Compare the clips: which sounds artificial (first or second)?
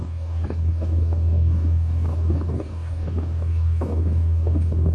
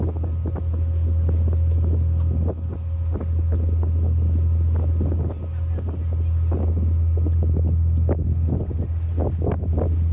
first